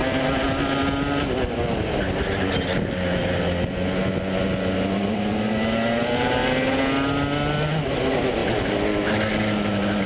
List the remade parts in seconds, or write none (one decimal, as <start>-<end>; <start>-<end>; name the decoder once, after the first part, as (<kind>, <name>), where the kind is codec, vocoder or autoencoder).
none